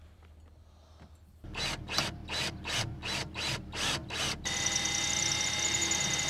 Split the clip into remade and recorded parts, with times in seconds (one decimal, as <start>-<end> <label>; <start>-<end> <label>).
0.0-6.3 recorded